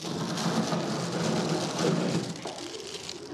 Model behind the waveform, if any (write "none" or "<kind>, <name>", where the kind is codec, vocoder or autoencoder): none